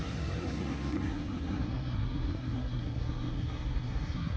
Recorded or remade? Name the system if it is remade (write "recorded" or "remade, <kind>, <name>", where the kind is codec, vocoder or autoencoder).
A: remade, codec, SNAC